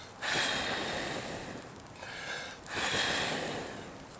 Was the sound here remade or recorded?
recorded